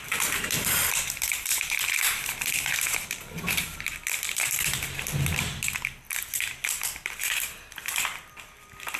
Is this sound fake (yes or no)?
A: yes